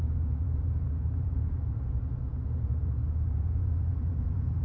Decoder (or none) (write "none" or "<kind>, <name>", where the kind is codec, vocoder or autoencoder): vocoder, Vocos